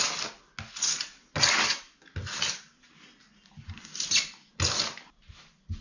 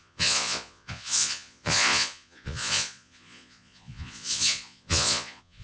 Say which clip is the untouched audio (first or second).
first